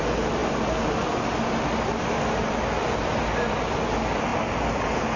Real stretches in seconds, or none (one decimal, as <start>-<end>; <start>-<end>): 0.0-5.2